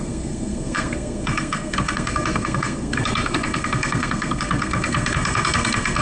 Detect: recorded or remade remade